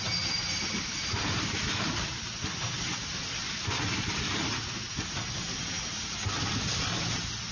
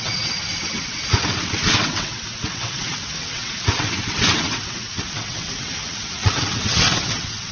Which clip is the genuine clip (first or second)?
first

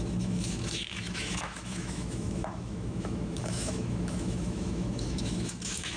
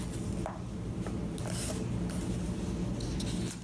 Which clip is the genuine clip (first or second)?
second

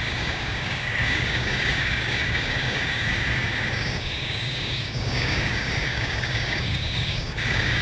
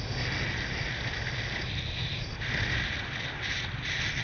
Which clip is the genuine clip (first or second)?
second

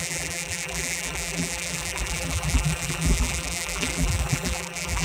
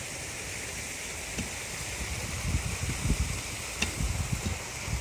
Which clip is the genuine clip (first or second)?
second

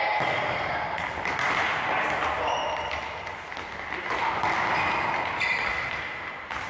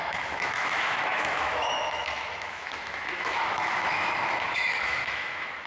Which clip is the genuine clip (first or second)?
first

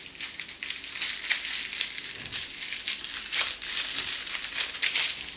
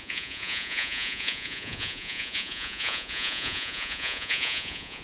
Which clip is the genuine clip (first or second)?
first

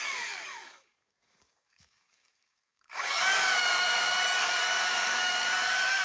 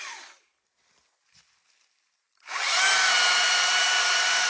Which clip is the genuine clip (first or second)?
second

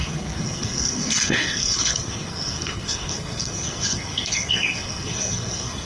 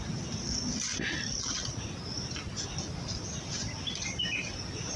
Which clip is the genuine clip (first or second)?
second